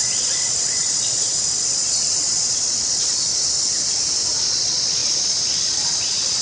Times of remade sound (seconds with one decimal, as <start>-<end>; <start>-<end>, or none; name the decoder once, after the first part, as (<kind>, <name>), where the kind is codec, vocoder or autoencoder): 0.0-3.3 (vocoder, Vocos); 4.4-6.4